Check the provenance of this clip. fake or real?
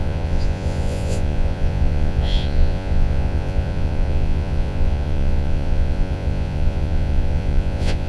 fake